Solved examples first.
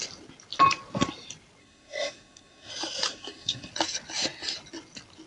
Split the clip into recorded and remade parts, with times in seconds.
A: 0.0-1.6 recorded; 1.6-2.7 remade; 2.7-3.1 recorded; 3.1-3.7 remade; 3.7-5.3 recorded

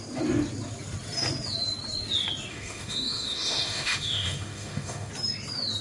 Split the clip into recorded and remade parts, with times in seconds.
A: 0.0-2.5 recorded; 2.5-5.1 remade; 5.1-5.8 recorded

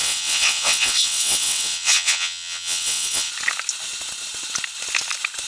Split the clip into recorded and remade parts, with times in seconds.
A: 0.0-3.3 remade; 3.3-5.5 recorded